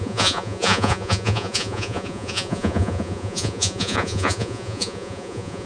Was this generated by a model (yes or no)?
yes